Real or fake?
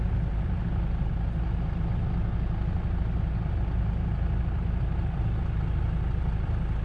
real